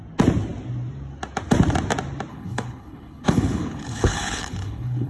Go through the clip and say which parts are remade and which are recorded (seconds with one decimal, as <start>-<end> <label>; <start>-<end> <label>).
0.0-2.3 recorded; 2.3-5.1 remade